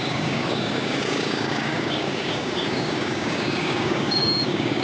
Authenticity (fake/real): fake